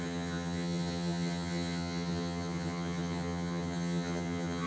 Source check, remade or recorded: remade